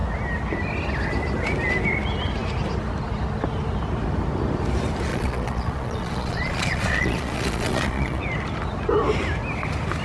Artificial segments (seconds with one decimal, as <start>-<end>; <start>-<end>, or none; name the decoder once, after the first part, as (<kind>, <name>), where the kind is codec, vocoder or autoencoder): 5.1-8.2 (vocoder, Vocos)